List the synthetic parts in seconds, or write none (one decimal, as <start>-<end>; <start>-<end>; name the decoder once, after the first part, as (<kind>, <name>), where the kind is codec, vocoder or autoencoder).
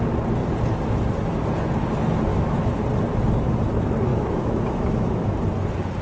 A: 2.3-2.8 (autoencoder, DAC-VAE); 4.1-5.3